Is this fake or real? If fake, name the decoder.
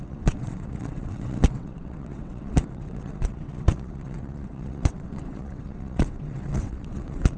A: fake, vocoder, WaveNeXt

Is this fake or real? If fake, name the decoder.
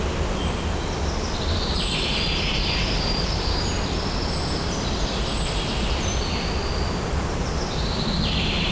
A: real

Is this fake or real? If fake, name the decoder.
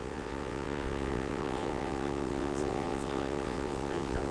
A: fake, vocoder, WaveNeXt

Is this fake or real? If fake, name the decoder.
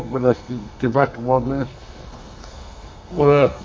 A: fake, codec, SNAC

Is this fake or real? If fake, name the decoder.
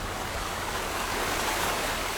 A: fake, codec, DAC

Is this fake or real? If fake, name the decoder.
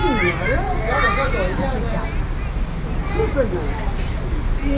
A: real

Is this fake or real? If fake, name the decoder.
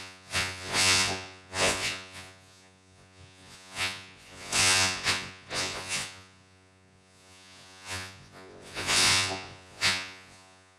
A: fake, vocoder, Vocos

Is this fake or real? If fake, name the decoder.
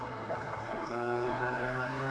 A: fake, codec, SNAC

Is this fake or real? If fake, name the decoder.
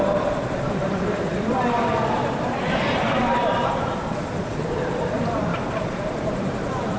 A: fake, vocoder, BigVGAN v2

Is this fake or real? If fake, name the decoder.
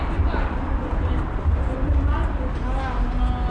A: real